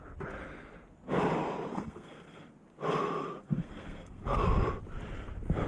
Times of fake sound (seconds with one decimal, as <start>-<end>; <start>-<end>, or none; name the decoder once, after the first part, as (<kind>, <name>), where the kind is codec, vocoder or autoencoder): 1.7-2.5 (codec, SNAC); 3.4-4.4